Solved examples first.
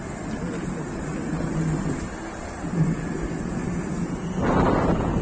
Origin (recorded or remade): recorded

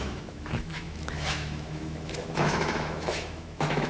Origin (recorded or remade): remade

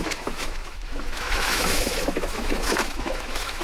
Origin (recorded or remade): remade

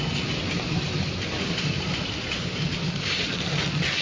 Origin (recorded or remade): recorded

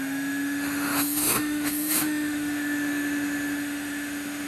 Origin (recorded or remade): remade